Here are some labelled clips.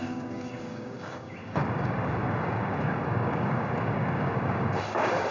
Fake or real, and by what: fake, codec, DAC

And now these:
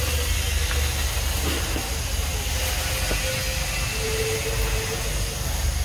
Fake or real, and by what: real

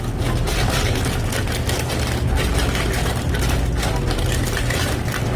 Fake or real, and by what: real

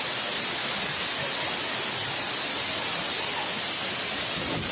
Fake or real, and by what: real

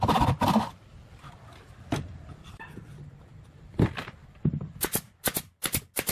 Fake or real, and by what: real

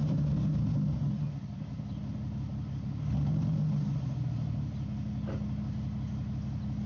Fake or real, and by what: real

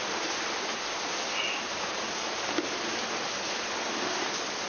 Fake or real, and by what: real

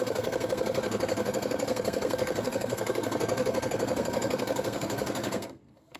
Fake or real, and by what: fake, codec, SNAC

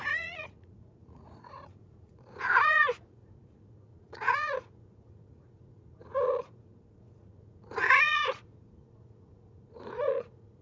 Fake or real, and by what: fake, vocoder, Vocos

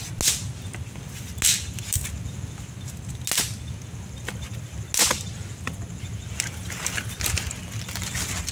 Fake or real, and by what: real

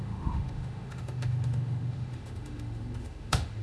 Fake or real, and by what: fake, autoencoder, DAC-VAE